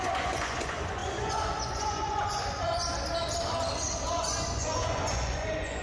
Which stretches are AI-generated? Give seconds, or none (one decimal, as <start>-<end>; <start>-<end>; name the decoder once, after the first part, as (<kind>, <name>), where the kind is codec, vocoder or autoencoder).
0.0-2.8 (vocoder, Vocos); 4.1-5.8